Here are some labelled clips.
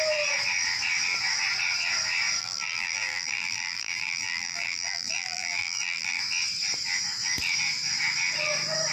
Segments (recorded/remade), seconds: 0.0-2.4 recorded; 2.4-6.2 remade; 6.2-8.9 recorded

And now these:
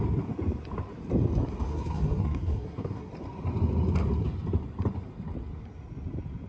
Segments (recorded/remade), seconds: 0.0-1.7 recorded; 1.7-3.1 remade; 3.1-6.5 recorded

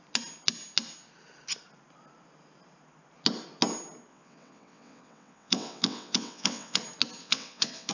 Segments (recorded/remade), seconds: 0.0-4.1 recorded; 4.1-6.8 remade; 6.8-7.2 recorded; 7.2-7.9 remade

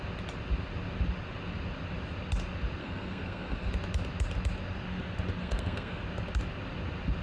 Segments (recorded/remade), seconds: 0.0-2.8 recorded; 2.8-3.7 remade; 3.7-5.4 recorded; 5.4-6.0 remade; 6.0-7.2 recorded

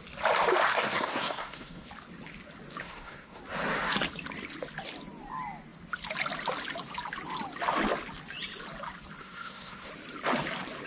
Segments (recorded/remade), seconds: 0.0-0.7 recorded; 0.7-1.9 remade; 1.9-2.8 recorded; 2.8-3.4 remade; 3.4-9.2 recorded; 9.2-9.9 remade; 9.9-10.9 recorded

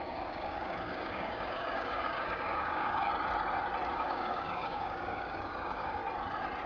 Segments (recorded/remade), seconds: 0.0-3.1 remade; 3.1-3.9 recorded; 3.9-6.0 remade; 6.0-6.7 recorded

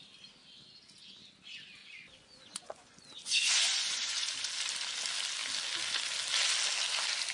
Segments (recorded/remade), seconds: 0.0-1.8 recorded; 1.8-4.3 remade; 4.3-7.3 recorded

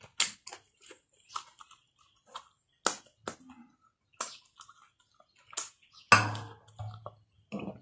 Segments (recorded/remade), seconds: 0.0-7.8 recorded